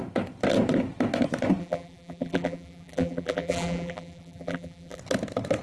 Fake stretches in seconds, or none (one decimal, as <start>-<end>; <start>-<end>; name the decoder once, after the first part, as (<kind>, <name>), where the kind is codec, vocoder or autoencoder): 1.6-5.0 (vocoder, BigVGAN v2)